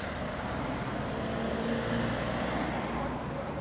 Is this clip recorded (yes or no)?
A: yes